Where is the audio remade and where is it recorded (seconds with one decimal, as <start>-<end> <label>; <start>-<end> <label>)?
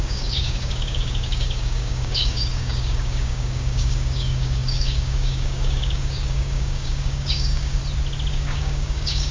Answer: 0.0-7.8 remade; 7.8-8.3 recorded; 8.3-9.3 remade